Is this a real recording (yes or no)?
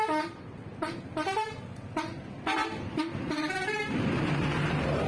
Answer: yes